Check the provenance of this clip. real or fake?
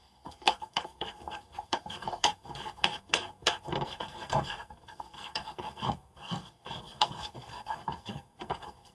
fake